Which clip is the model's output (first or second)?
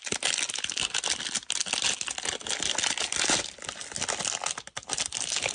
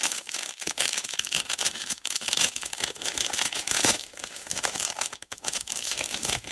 second